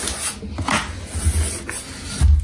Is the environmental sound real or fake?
real